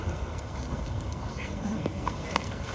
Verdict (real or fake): fake